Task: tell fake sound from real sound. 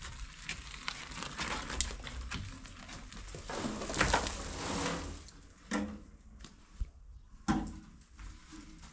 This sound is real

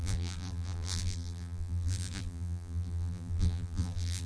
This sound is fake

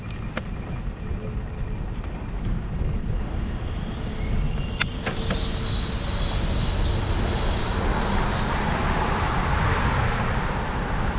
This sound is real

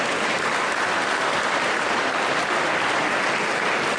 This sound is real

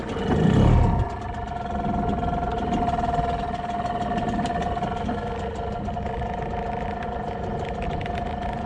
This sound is real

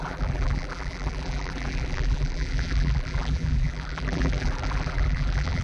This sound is fake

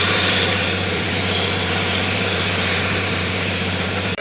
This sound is fake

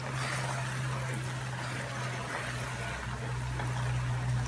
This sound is real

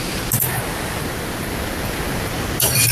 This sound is real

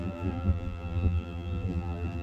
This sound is fake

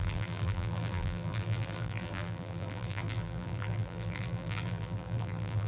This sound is fake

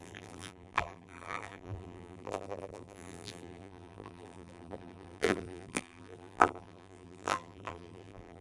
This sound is fake